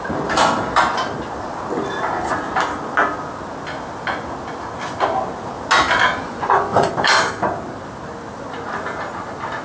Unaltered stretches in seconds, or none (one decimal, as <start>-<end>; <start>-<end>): 0.0-6.2; 6.9-9.6